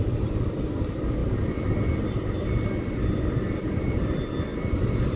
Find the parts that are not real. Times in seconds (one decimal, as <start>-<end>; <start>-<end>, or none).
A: none